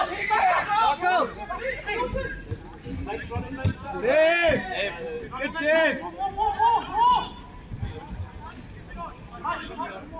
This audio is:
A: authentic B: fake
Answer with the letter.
A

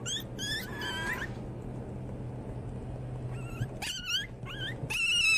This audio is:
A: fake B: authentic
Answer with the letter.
B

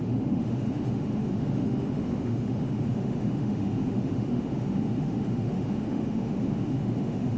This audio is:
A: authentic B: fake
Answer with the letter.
B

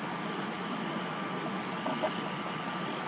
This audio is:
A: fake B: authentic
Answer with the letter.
B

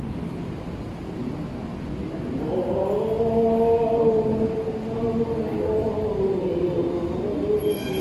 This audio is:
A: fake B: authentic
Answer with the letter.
B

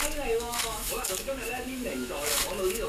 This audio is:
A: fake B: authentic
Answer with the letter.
A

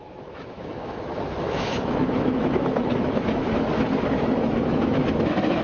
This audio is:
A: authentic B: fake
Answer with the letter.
B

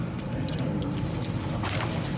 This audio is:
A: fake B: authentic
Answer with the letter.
B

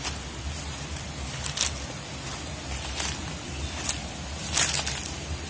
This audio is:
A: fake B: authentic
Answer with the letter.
B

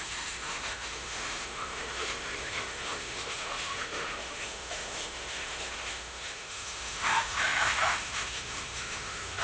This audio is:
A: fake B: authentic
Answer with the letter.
A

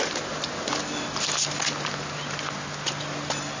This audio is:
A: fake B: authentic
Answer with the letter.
B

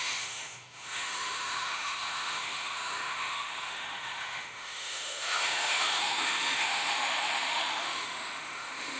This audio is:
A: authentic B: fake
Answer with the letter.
B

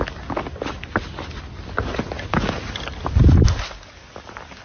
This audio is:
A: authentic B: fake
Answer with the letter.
A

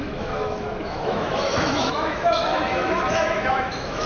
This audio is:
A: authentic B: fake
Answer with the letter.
B